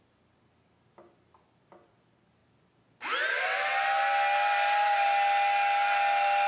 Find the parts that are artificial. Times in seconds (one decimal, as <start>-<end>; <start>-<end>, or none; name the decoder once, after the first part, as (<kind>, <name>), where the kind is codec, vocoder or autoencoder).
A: none